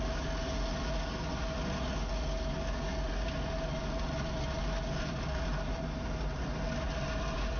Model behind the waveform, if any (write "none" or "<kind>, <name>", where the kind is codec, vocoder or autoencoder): none